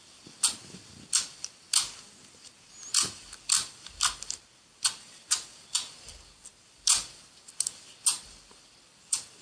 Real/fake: real